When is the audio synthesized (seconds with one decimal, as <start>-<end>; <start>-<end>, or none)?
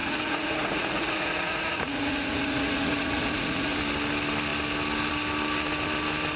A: 0.0-3.8